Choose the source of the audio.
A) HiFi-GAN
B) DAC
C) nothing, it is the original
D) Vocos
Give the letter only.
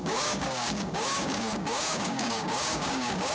B